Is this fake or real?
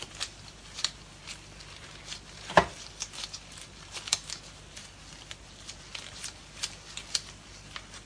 real